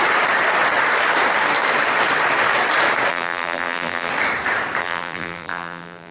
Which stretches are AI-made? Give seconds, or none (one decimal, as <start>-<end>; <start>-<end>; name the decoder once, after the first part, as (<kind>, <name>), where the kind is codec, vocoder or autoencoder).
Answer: 3.1-4.1 (vocoder, BigVGAN v2); 4.8-6.1